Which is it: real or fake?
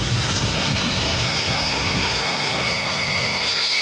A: fake